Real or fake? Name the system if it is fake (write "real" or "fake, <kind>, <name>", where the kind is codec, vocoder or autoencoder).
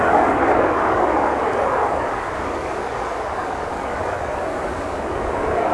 fake, codec, DAC